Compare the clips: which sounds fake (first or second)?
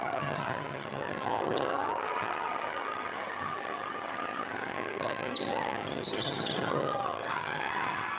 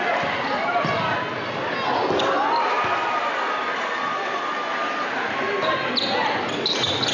first